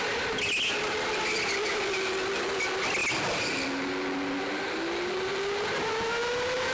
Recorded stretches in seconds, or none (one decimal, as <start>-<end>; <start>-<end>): 0.0-6.7